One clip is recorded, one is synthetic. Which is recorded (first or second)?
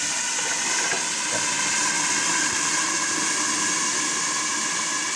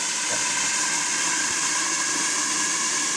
first